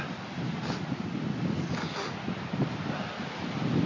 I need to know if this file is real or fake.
real